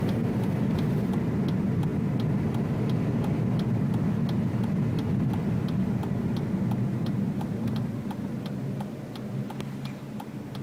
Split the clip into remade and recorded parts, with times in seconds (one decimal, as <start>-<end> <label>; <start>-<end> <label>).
0.0-10.6 recorded